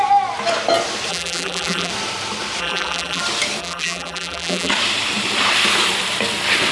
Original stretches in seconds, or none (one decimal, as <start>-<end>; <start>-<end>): 0.0-1.1; 1.9-2.6; 3.2-3.6; 4.7-6.7